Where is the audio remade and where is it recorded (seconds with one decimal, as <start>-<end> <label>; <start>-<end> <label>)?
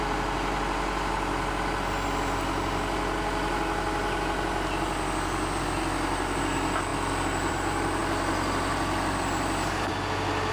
0.0-10.5 recorded